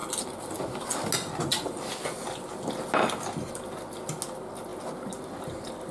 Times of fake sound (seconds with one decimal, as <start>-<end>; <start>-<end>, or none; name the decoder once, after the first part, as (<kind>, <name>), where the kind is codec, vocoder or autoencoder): none

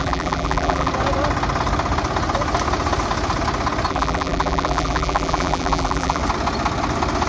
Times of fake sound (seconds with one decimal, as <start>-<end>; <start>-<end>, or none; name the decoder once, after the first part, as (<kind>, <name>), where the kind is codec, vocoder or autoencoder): 0.0-0.9 (vocoder, BigVGAN v2); 3.9-6.2